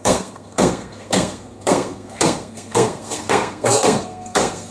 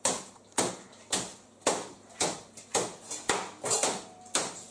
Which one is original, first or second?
second